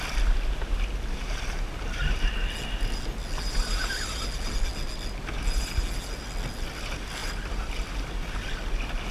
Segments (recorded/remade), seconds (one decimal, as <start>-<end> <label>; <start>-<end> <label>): 0.0-9.1 recorded